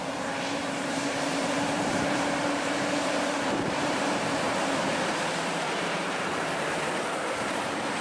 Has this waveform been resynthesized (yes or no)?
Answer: yes